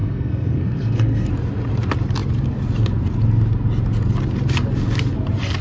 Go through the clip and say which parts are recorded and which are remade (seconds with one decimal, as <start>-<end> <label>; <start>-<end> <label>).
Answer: 0.0-1.3 remade; 1.3-5.6 recorded